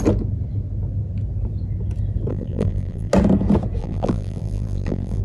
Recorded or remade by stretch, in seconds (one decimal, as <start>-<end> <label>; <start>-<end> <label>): 0.0-2.3 recorded; 2.3-3.1 remade; 3.1-3.8 recorded; 3.8-5.2 remade